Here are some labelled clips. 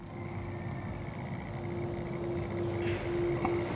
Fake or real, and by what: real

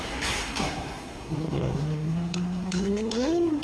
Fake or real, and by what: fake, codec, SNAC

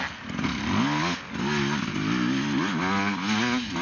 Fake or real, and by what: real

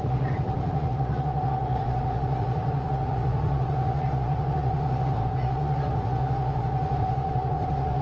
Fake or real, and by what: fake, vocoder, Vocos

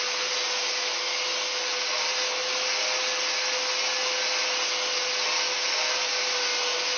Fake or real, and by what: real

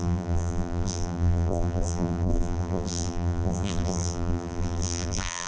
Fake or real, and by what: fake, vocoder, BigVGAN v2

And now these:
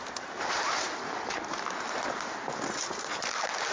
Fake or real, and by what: real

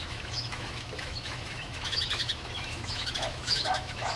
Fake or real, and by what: fake, autoencoder, DAC-VAE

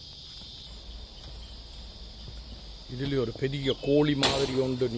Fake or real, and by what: real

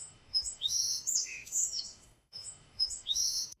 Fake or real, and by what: fake, autoencoder, DAC-VAE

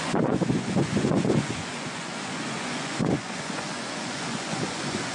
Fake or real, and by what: fake, vocoder, Vocos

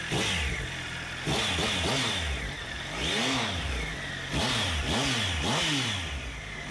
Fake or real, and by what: real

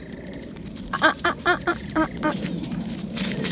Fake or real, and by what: fake, vocoder, BigVGAN v2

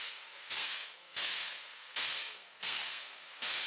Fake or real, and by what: fake, codec, SNAC